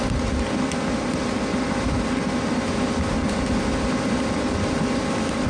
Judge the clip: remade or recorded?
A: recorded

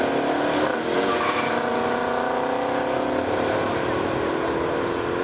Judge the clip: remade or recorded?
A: recorded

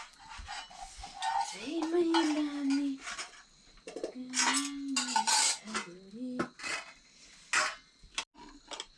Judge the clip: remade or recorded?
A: recorded